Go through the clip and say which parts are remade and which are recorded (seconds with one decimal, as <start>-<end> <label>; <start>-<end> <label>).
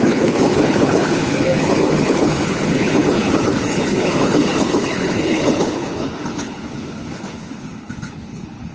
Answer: 0.0-8.7 remade